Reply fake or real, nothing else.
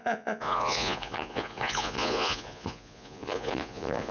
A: fake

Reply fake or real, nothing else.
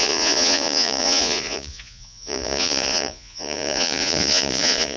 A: fake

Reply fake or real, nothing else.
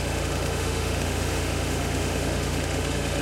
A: fake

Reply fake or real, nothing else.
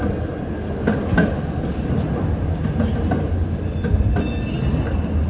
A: real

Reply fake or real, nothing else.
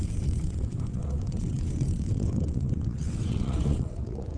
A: fake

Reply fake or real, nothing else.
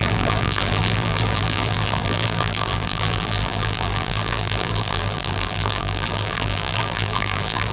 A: fake